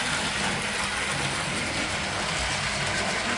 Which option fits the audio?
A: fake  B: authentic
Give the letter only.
B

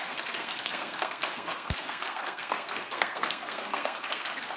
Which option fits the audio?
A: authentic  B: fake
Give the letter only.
B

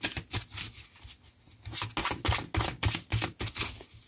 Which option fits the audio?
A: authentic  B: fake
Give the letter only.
A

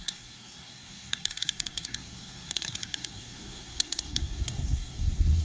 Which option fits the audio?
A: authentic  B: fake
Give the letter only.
B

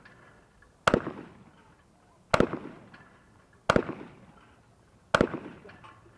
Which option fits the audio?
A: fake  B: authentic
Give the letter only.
B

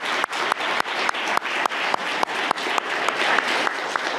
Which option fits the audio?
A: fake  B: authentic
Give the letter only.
B